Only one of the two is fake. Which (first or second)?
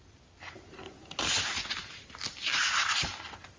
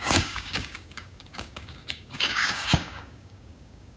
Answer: second